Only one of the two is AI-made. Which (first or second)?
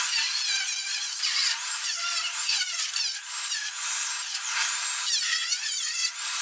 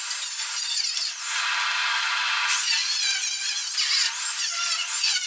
first